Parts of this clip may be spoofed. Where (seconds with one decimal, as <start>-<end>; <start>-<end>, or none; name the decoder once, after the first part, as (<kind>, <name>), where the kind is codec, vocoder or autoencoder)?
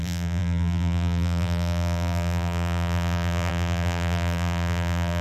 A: 0.0-5.2 (vocoder, BigVGAN v2)